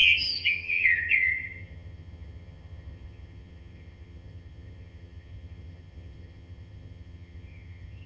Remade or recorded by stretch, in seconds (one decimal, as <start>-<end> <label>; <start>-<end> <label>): 0.0-8.1 remade